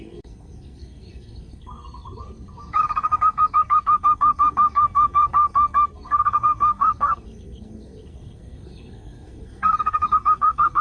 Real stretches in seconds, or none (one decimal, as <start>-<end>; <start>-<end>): none